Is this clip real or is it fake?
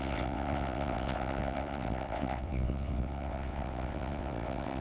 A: fake